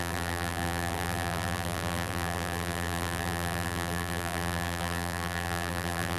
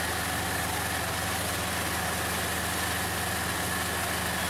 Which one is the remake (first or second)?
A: first